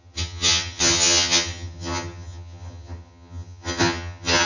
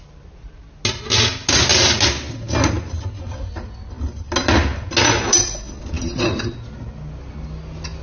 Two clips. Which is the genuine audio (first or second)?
second